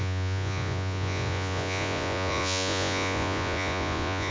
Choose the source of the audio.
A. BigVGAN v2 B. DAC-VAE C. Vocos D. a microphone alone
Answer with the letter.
C